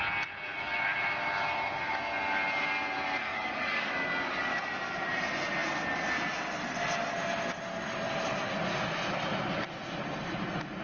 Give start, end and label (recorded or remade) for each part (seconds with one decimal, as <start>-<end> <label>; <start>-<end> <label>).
0.0-3.2 recorded; 3.2-3.9 remade; 3.9-10.8 recorded

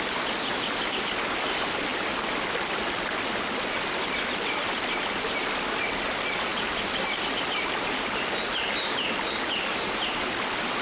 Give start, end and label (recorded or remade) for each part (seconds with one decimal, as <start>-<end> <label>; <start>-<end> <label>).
0.0-10.8 recorded

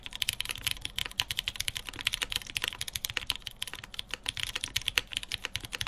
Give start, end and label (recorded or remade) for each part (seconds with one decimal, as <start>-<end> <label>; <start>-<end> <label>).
0.0-5.9 recorded

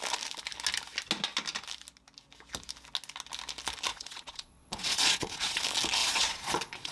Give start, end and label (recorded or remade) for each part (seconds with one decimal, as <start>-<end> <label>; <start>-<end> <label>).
0.0-3.9 recorded; 3.9-5.6 remade; 5.6-6.0 recorded; 6.0-6.9 remade